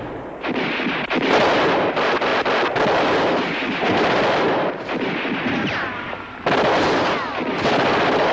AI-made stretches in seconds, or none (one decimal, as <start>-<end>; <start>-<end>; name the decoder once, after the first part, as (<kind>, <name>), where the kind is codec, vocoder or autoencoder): 0.0-2.3 (vocoder, BigVGAN v2); 4.4-8.3